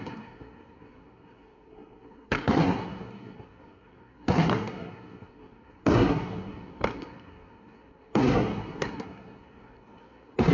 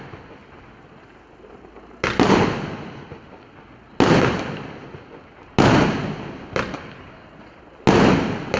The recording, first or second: second